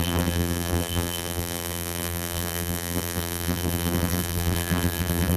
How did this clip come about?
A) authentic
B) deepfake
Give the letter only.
B